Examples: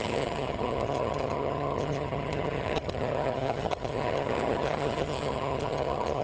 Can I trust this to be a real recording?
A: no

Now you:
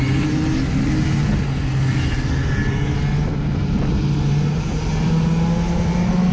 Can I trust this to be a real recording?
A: yes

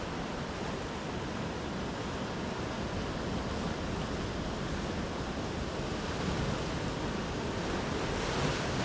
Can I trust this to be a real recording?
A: yes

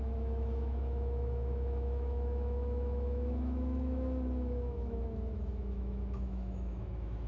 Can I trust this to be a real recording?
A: no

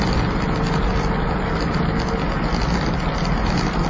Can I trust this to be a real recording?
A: yes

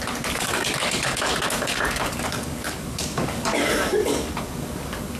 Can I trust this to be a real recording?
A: no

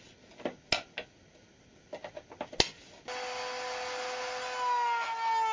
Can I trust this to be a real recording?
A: yes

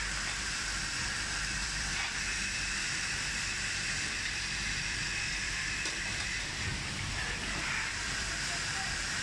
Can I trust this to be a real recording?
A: no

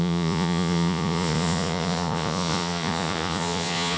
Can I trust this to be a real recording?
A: no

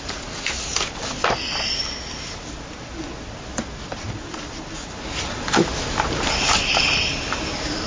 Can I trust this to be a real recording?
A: yes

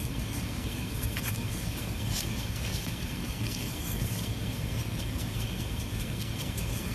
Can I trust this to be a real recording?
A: no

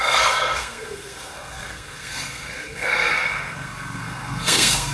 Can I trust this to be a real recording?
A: no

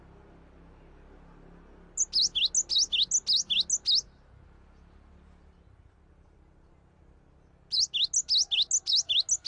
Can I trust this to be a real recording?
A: yes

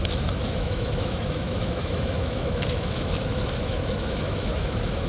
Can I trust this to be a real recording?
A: no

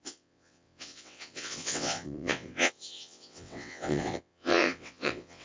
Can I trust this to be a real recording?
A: no